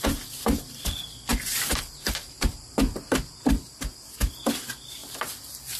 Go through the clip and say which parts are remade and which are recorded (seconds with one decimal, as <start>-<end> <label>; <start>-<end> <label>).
0.0-1.3 recorded; 1.3-2.8 remade; 2.8-5.0 recorded; 5.0-5.8 remade